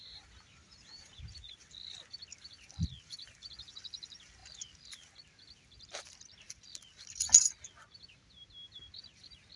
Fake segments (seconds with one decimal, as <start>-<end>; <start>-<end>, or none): 0.5-1.2